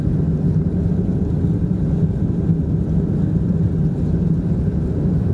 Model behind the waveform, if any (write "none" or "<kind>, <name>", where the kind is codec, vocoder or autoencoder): none